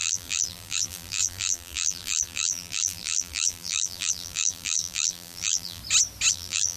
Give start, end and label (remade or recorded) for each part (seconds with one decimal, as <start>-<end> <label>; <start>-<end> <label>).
0.0-5.8 remade; 5.8-6.3 recorded; 6.3-6.8 remade